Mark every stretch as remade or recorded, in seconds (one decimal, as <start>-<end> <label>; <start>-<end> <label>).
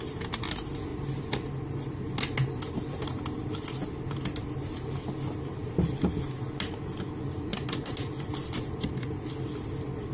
0.0-5.6 recorded; 5.6-6.3 remade; 6.3-10.1 recorded